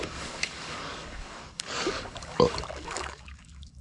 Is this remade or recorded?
remade